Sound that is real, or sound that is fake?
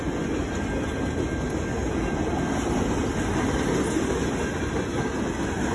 real